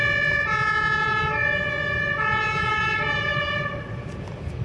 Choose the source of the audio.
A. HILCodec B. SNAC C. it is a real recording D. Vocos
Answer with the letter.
C